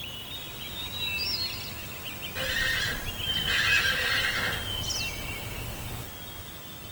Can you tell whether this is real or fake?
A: real